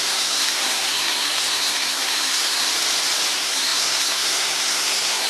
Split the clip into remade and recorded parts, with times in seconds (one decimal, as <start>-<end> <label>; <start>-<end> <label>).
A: 0.0-2.7 remade; 2.7-3.3 recorded; 3.3-5.3 remade